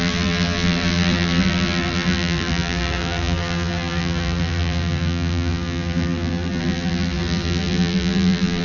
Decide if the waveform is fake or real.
fake